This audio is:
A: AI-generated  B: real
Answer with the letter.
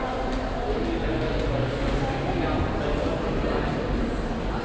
B